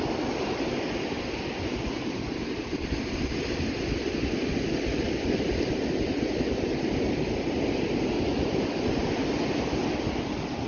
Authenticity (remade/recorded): remade